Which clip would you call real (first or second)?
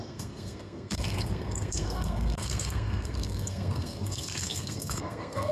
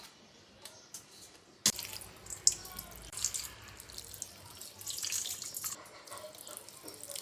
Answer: second